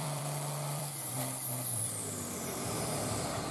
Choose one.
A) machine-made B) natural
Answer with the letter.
A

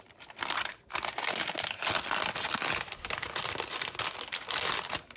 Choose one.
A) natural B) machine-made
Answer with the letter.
A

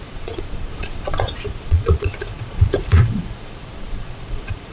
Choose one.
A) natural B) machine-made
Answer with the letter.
B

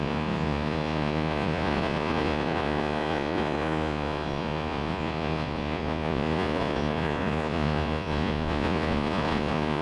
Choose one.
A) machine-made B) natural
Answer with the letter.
A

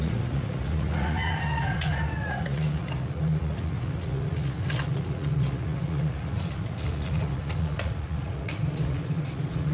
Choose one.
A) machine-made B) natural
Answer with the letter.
A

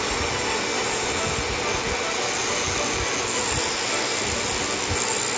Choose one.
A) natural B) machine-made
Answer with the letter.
A